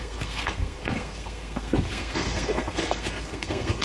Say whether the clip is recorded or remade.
remade